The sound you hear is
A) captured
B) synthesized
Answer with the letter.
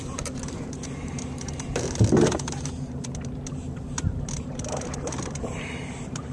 B